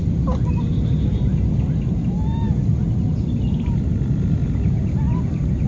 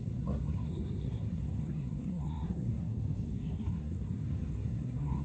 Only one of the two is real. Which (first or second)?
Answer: first